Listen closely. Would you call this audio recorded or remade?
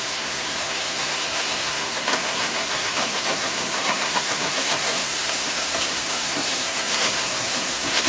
remade